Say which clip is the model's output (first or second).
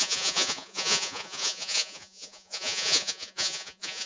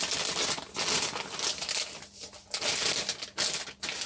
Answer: first